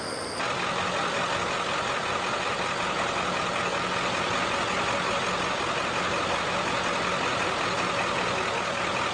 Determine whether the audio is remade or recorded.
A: recorded